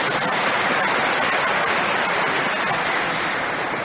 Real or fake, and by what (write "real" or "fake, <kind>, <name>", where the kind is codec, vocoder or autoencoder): real